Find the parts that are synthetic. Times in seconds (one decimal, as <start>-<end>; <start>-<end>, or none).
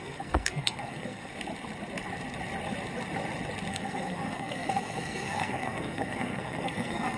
0.0-1.3; 3.7-7.2